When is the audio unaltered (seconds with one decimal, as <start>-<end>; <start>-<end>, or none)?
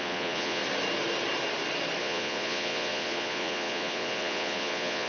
0.6-2.0